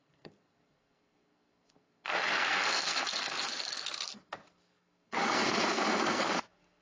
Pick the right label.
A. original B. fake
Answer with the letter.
B